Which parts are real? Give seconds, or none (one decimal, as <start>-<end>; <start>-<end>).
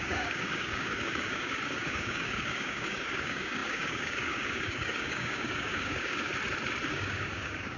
6.3-6.9